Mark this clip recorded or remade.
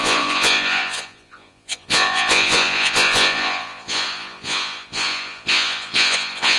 remade